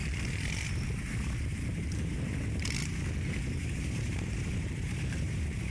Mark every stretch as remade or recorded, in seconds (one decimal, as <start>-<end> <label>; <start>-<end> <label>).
0.0-0.7 recorded; 0.7-5.7 remade